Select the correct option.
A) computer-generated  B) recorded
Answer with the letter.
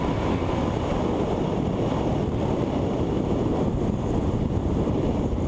A